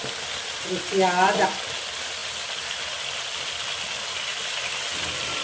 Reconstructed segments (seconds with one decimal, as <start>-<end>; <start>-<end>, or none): none